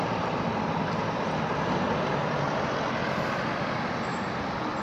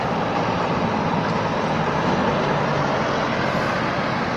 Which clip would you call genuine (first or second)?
second